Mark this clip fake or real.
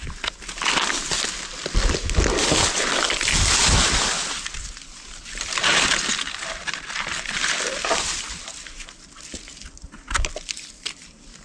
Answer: real